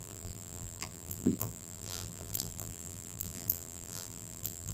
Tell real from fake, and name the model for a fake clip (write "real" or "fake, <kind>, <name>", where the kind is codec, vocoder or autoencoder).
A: fake, vocoder, BigVGAN v2